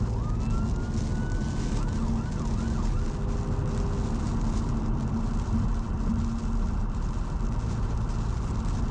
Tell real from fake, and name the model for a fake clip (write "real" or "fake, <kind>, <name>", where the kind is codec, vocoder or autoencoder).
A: real